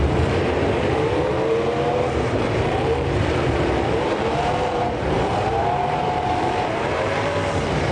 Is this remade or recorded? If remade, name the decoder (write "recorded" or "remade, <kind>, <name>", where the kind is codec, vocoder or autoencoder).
remade, vocoder, BigVGAN v2